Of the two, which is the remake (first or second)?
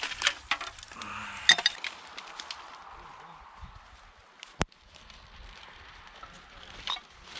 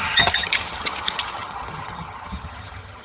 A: second